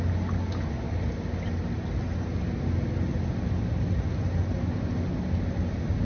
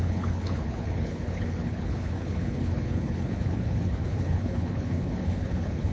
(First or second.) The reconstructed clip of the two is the second